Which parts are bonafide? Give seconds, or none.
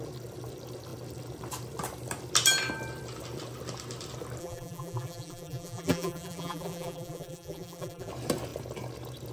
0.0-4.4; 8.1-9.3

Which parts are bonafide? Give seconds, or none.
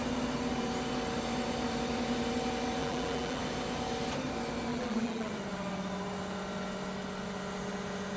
0.0-2.8; 3.4-4.7; 5.3-8.2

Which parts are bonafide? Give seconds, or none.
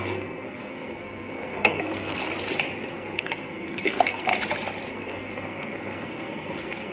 2.2-2.9; 4.3-4.9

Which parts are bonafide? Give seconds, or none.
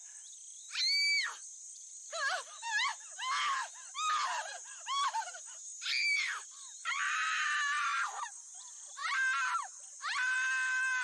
0.0-1.6; 2.9-6.0